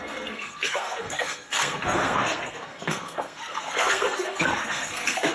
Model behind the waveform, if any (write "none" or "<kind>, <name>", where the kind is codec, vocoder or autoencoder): codec, SNAC